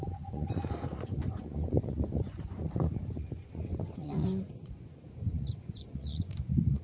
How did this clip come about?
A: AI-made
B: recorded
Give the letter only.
A